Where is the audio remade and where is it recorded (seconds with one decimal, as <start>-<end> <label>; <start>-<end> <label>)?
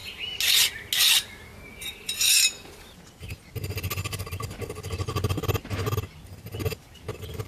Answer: 0.0-7.5 recorded